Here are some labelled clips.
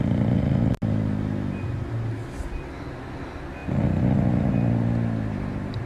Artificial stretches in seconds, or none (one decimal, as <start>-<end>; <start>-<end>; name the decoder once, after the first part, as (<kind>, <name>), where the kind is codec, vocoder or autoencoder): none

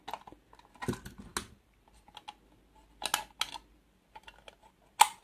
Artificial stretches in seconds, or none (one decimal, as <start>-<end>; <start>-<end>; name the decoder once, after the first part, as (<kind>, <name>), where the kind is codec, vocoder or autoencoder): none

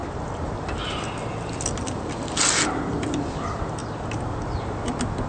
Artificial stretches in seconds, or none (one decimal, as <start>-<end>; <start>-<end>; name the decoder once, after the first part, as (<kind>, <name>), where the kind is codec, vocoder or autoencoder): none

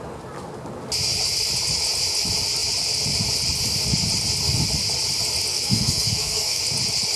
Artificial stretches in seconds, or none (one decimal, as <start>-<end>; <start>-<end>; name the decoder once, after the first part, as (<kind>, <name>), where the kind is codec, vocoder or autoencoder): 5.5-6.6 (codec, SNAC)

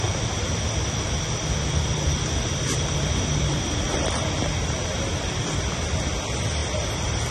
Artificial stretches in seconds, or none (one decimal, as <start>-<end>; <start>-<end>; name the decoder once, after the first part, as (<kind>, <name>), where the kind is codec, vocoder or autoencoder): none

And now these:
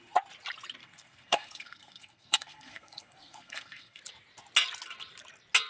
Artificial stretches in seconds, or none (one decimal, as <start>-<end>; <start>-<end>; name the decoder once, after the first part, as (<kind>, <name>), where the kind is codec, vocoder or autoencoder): 0.8-4.0 (codec, SNAC)